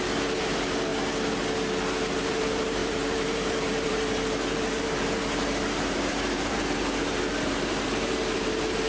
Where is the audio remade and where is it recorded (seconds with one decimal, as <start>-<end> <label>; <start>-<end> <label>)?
0.0-0.9 remade; 0.9-2.1 recorded; 2.1-8.9 remade